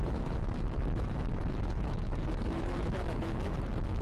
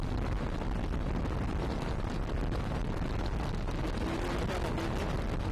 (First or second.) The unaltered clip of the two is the second